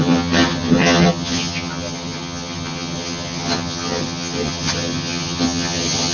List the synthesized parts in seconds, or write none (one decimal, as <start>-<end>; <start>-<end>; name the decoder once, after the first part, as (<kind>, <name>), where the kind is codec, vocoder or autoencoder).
0.0-6.1 (vocoder, HiFi-GAN)